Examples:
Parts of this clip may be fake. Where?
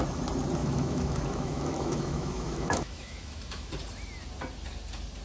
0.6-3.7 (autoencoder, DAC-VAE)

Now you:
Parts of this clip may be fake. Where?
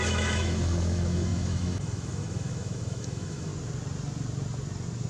0.0-3.5 (autoencoder, DAC-VAE)